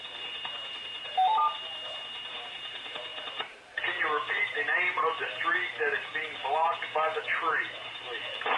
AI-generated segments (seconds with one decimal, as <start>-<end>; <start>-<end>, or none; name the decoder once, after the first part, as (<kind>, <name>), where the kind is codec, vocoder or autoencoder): 0.0-8.6 (vocoder, BigVGAN v2)